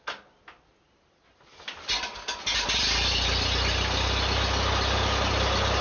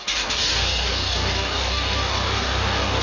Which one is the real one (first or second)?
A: first